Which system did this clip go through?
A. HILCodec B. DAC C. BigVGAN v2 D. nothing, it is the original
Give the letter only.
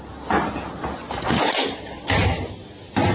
D